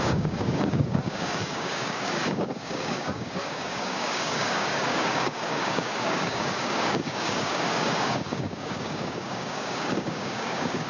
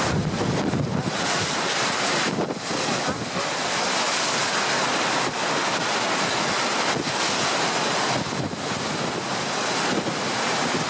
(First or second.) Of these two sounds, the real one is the second